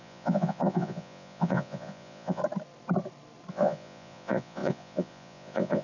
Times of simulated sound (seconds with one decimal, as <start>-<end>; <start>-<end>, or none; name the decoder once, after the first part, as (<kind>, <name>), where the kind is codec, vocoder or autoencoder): 0.0-2.4 (vocoder, Vocos); 3.5-5.8